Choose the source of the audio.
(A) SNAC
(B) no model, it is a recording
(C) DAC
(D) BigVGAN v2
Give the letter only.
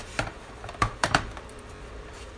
D